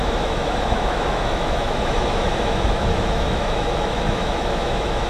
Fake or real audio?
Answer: fake